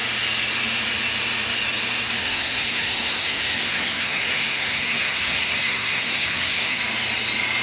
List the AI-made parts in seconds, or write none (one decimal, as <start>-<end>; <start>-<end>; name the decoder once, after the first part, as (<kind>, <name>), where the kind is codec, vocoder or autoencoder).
2.2-6.8 (codec, SNAC)